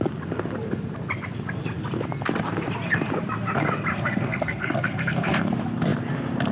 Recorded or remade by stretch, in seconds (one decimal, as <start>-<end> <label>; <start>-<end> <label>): 0.0-3.9 recorded; 3.9-5.5 remade; 5.5-6.5 recorded

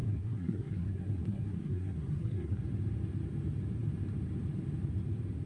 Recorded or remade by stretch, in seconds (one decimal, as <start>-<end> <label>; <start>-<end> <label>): 0.0-2.6 remade; 2.6-5.5 recorded

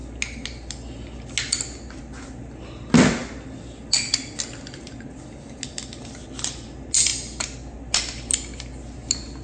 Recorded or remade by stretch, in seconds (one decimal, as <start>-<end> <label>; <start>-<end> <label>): 0.0-9.4 recorded

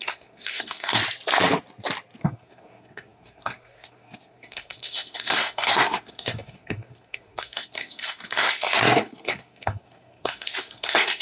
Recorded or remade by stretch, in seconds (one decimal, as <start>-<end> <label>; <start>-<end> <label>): 0.0-1.0 remade; 1.0-2.2 recorded; 2.2-11.2 remade